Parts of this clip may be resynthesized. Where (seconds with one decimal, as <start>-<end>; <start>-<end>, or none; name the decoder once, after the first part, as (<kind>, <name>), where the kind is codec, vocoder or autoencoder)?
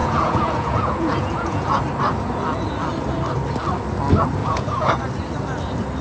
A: 0.0-1.8 (vocoder, Vocos); 4.4-5.0